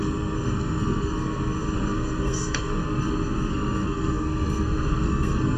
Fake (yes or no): yes